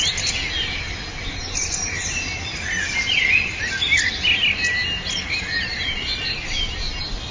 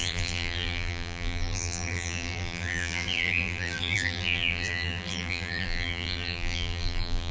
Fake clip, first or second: second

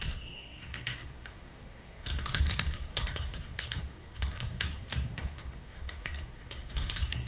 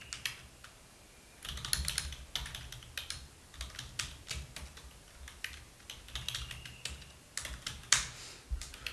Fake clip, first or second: first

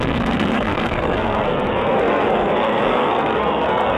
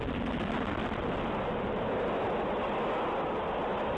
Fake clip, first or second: first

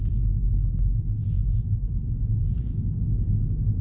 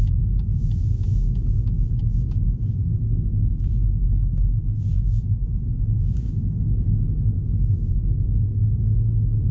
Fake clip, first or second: second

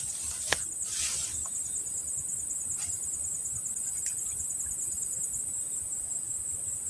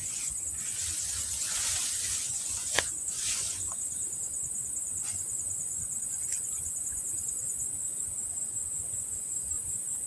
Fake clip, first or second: second